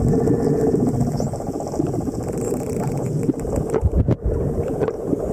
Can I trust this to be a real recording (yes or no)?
yes